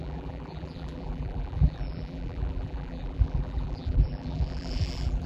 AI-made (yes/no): yes